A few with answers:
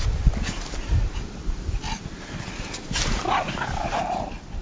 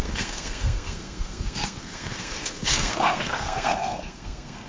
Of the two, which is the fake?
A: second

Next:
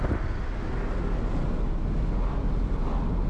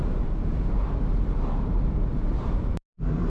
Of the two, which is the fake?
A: second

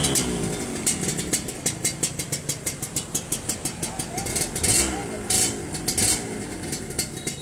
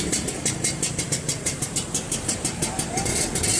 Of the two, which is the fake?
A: second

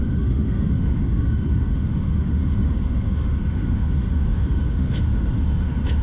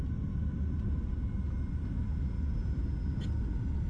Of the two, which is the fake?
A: first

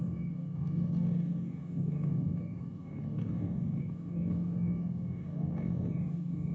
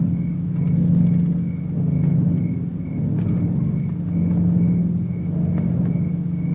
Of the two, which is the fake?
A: first